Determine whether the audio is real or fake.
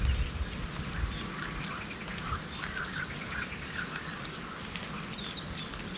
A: real